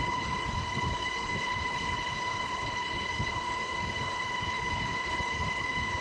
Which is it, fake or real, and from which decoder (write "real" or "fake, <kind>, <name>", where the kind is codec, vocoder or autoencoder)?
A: fake, codec, HILCodec